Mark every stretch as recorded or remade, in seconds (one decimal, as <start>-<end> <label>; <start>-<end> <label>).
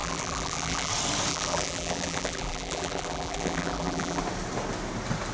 0.0-0.9 remade; 0.9-1.3 recorded; 1.3-4.2 remade; 4.2-5.3 recorded